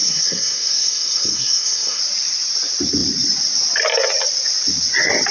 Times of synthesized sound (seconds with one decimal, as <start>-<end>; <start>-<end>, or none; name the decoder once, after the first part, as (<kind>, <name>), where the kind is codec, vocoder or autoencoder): 0.0-2.0 (codec, SNAC)